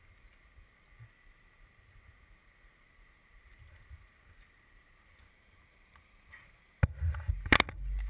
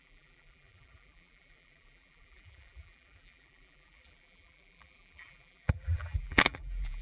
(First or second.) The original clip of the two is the first